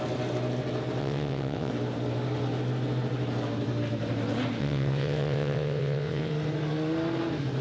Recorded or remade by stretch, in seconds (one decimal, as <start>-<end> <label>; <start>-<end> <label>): 0.0-1.0 recorded; 1.0-1.7 remade; 1.7-4.6 recorded; 4.6-6.3 remade; 6.3-7.6 recorded